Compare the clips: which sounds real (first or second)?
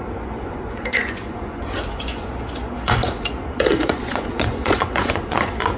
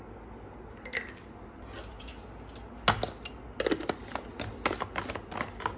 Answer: second